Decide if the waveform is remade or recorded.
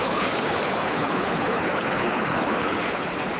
remade